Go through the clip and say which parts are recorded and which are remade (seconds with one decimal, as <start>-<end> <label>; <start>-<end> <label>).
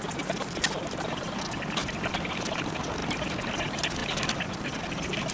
0.0-5.3 recorded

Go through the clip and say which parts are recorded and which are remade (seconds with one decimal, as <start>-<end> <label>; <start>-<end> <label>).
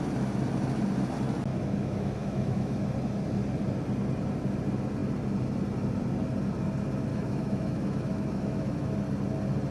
0.0-1.5 recorded; 1.5-2.8 remade; 2.8-7.1 recorded; 7.1-8.9 remade; 8.9-9.7 recorded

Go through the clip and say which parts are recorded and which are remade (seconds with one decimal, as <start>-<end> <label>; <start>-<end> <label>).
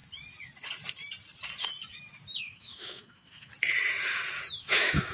0.0-2.4 recorded; 2.4-3.5 remade; 3.5-4.6 recorded; 4.6-5.1 remade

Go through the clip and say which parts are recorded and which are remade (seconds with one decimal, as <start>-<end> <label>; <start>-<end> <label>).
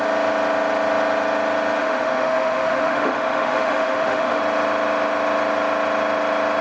0.0-1.8 recorded; 1.8-4.4 remade; 4.4-6.6 recorded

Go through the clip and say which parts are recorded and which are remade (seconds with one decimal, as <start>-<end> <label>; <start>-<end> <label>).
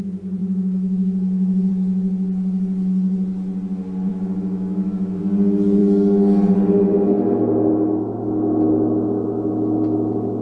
0.0-0.4 recorded; 0.4-1.7 remade; 1.7-4.1 recorded; 4.1-5.2 remade; 5.2-10.4 recorded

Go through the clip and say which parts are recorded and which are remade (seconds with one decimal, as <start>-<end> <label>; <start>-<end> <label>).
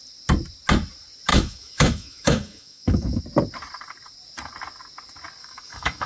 0.0-1.3 recorded; 1.3-3.2 remade; 3.2-5.4 recorded; 5.4-6.1 remade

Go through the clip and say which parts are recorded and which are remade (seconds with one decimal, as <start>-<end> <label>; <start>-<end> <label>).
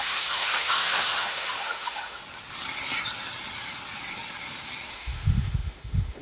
0.0-2.2 remade; 2.2-4.9 recorded; 4.9-6.2 remade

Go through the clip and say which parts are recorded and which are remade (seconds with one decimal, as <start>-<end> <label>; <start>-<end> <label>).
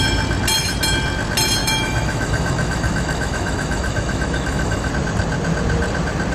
0.0-1.6 recorded; 1.6-4.9 remade; 4.9-6.3 recorded